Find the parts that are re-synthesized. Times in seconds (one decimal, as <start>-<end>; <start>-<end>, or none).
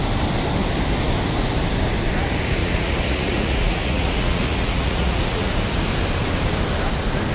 2.6-5.5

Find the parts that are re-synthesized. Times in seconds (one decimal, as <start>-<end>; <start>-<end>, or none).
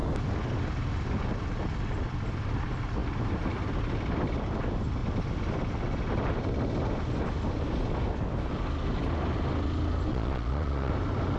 10.1-10.9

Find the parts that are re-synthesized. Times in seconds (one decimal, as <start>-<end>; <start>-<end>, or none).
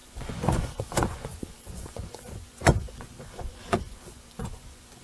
0.0-5.0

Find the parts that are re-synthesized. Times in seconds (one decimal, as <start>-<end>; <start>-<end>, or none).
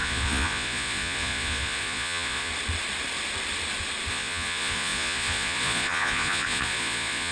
0.0-2.5; 4.1-7.3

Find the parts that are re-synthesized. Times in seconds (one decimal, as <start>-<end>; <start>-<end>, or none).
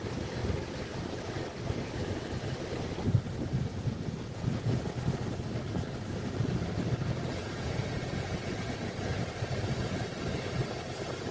3.7-4.8; 7.4-9.1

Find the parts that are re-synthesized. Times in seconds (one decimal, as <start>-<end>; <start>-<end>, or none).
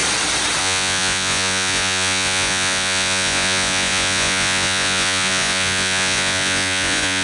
0.6-7.2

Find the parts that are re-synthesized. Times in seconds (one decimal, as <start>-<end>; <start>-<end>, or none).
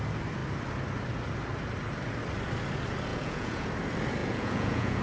3.1-3.7; 4.2-5.0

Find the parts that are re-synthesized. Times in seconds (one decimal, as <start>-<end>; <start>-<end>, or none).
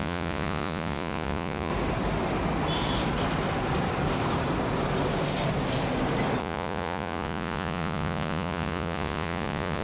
0.0-1.7; 6.4-9.8